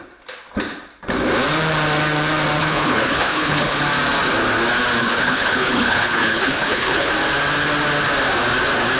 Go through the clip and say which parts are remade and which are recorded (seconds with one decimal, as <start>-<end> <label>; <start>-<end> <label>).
0.0-2.6 recorded; 2.6-3.8 remade; 3.8-5.0 recorded; 5.0-7.1 remade; 7.1-9.0 recorded